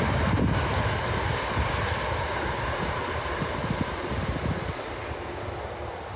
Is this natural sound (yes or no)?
yes